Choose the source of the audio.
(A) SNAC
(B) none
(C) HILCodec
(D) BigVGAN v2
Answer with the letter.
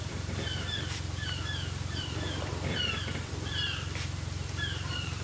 D